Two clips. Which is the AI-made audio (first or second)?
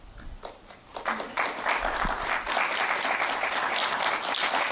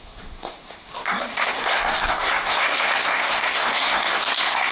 second